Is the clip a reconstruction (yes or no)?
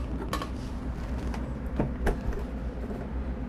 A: no